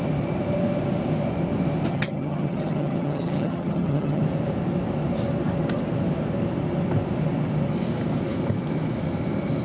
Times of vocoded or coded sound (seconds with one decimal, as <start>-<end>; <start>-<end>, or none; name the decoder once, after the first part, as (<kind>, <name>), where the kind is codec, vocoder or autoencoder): 1.9-4.2 (vocoder, HiFi-GAN)